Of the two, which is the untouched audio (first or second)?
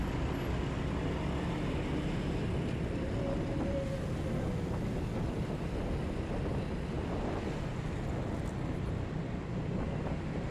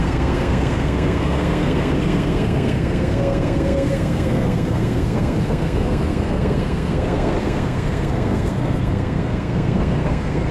first